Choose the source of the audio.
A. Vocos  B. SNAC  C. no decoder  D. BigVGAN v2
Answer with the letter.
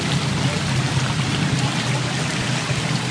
C